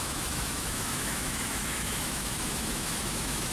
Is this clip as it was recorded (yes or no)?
no